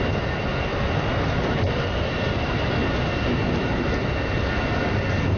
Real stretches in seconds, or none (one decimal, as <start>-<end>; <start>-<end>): 0.0-5.4